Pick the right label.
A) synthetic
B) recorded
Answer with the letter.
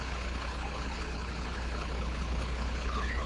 A